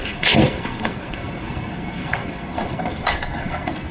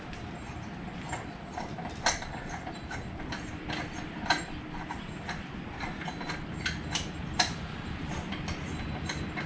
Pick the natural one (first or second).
second